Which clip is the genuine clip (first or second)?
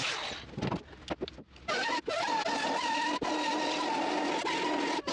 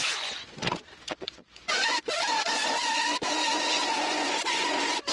first